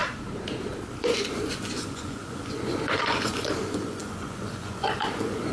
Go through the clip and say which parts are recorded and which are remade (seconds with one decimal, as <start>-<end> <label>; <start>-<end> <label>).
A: 0.0-1.0 recorded; 1.0-5.5 remade